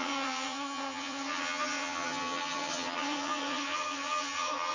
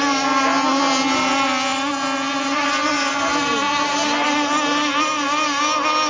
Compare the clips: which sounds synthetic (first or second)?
first